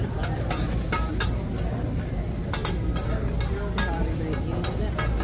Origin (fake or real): real